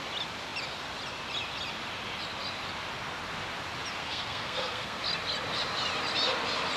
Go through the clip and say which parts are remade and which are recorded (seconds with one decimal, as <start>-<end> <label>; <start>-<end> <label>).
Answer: 0.0-4.0 recorded; 4.0-5.0 remade; 5.0-6.8 recorded